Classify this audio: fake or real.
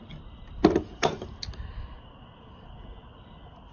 real